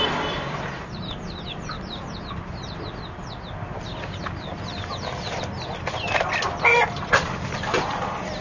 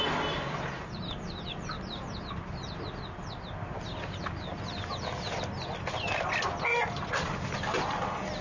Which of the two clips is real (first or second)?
second